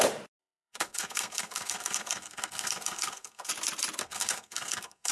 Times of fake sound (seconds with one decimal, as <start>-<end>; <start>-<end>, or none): 0.4-3.5; 4.0-5.1